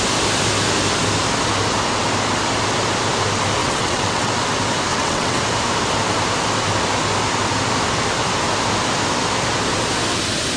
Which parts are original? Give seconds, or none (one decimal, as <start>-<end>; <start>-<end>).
0.0-3.6; 4.3-4.9; 5.4-10.6